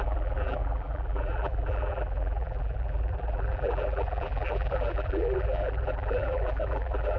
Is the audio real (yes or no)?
no